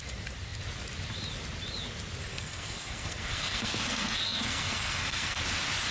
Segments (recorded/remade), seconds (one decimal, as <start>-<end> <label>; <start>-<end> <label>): 0.0-2.3 recorded; 2.3-5.4 remade; 5.4-5.9 recorded